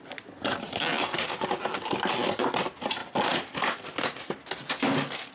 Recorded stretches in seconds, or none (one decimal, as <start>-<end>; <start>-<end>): 0.0-0.9; 1.5-5.3